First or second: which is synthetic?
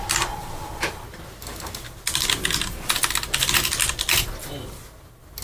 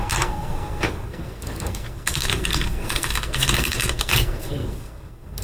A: second